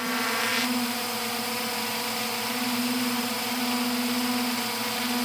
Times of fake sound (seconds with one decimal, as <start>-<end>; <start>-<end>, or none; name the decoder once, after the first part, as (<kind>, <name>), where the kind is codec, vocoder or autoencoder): 0.5-3.6 (vocoder, BigVGAN v2)